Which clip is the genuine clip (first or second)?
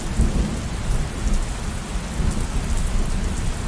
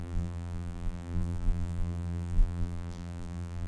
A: first